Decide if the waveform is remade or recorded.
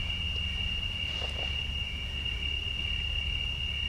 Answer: recorded